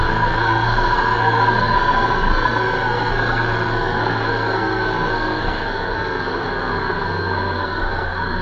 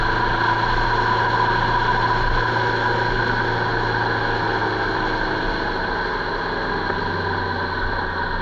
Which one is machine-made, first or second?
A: first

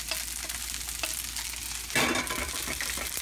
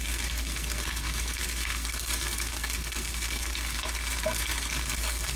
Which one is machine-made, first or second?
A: second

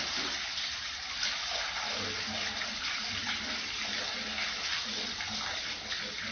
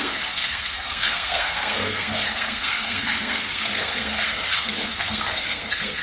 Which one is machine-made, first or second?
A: second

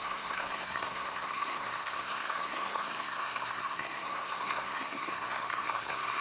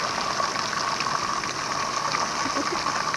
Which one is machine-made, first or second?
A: first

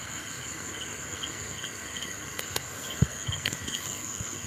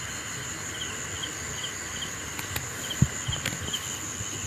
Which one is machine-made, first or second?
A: first